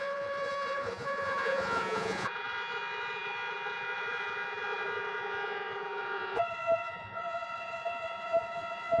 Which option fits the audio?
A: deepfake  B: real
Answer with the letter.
A